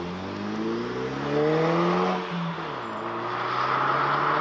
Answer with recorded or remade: recorded